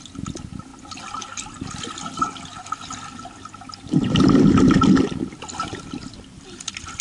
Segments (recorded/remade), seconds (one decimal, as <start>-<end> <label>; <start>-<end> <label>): 0.0-7.0 recorded